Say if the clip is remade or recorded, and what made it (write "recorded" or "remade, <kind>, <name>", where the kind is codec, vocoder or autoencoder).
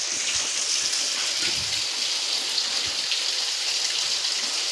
recorded